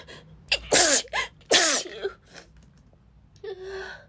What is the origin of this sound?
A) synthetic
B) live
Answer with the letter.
B